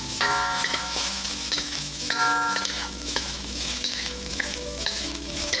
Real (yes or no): no